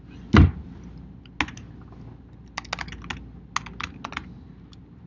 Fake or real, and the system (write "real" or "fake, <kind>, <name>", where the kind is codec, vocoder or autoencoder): real